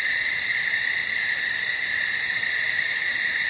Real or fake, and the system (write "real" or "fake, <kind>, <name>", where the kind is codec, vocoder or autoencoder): fake, vocoder, BigVGAN v2